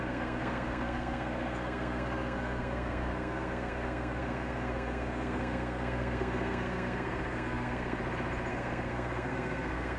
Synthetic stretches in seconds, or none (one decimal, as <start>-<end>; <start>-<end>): 0.0-8.0; 8.5-10.0